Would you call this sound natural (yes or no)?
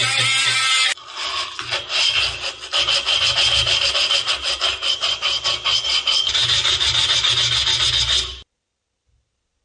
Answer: yes